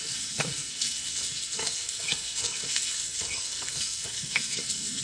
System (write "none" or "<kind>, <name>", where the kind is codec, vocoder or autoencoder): codec, SNAC